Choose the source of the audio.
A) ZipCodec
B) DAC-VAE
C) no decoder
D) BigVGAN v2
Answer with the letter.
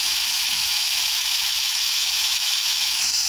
B